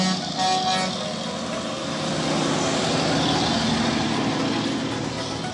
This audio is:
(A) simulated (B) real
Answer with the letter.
B